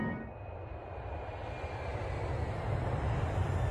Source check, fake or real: real